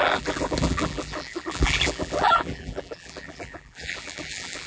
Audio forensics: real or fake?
fake